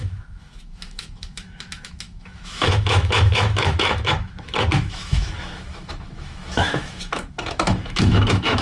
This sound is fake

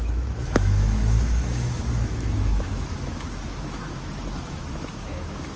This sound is fake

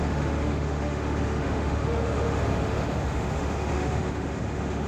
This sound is fake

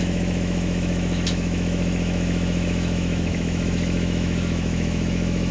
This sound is fake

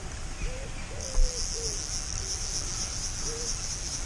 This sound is real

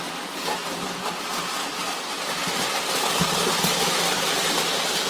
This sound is real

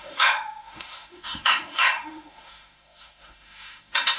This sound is fake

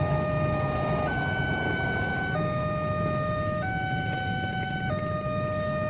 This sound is fake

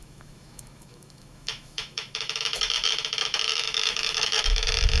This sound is fake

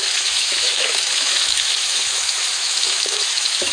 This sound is fake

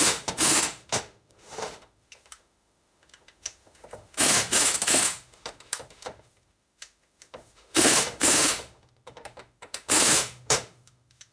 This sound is fake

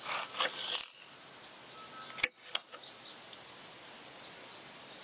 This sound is real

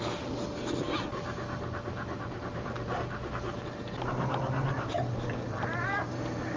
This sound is real